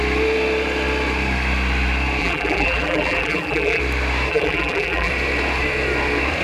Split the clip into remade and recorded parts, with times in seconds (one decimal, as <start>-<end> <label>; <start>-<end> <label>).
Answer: 0.0-2.2 recorded; 2.2-3.8 remade; 3.8-4.3 recorded; 4.3-5.1 remade; 5.1-6.4 recorded